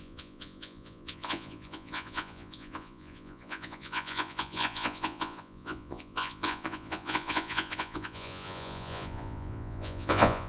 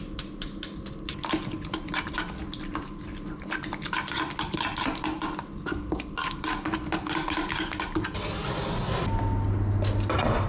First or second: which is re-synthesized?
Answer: first